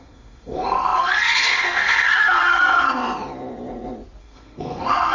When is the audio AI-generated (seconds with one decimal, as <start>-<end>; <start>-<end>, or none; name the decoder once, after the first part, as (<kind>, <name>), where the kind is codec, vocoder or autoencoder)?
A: 0.0-3.0 (codec, SNAC); 4.2-5.1